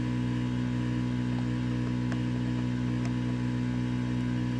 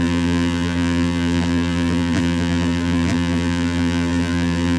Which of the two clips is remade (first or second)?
second